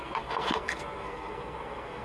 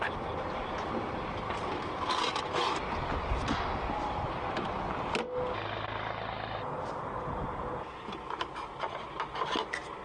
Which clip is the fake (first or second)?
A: first